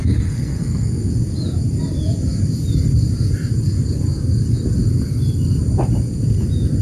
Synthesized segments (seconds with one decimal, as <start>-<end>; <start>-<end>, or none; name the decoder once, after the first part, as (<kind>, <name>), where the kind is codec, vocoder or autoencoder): 0.0-1.1 (codec, SNAC)